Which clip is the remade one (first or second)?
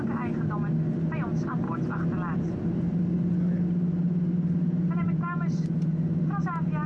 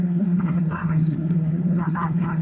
second